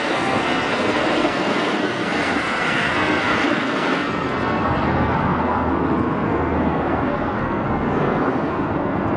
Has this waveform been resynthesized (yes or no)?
yes